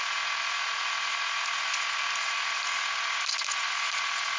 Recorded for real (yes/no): yes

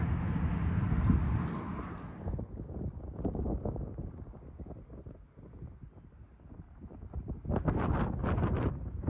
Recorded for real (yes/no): yes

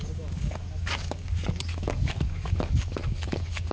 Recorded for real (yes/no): no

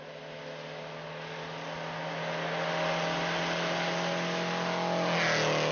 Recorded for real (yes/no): yes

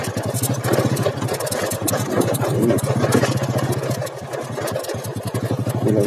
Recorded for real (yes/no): yes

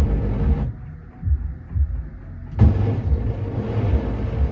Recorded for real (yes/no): yes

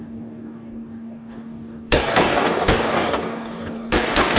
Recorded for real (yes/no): no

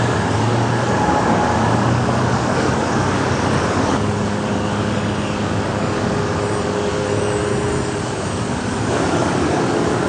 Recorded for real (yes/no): no